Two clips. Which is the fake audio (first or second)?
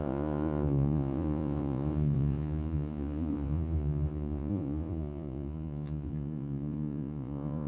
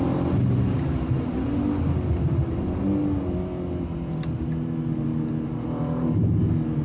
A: first